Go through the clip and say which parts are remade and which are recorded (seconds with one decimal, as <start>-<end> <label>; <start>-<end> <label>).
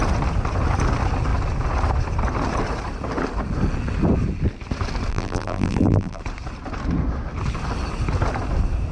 0.0-5.1 recorded; 5.1-6.2 remade; 6.2-8.9 recorded